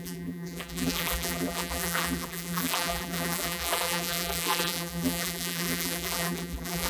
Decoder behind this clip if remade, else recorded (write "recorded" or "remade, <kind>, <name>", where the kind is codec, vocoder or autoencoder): remade, vocoder, BigVGAN v2